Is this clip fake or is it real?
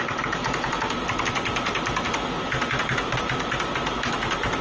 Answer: real